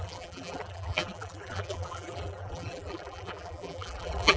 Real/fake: fake